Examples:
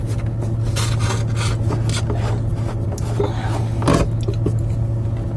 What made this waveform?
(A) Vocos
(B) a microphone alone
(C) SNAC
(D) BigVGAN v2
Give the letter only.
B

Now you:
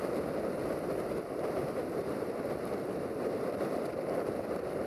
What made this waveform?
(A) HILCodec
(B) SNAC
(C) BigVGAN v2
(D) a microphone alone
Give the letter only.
C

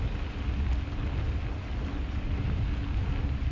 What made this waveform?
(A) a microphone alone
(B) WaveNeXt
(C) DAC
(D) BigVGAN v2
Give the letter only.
A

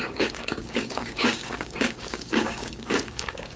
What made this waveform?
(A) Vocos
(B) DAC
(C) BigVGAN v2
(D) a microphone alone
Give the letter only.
B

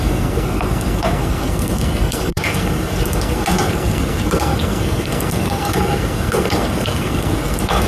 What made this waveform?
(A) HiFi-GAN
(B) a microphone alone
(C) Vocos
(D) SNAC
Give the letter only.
D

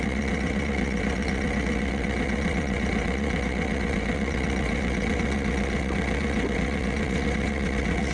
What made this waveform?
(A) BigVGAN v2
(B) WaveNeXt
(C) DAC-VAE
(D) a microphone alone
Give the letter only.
B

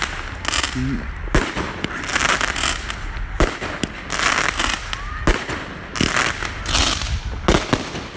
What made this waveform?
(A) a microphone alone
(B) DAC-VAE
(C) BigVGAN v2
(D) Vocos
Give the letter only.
A